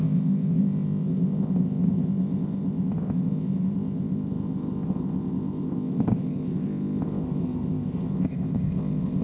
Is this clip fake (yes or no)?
yes